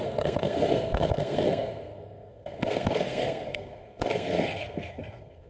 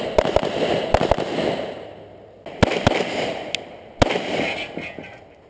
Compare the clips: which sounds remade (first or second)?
first